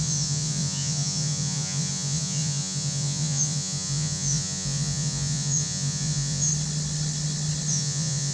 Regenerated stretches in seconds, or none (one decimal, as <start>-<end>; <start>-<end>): 0.0-6.5; 7.7-8.3